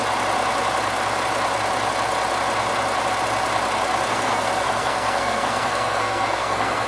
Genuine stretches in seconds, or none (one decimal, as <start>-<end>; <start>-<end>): 0.0-4.1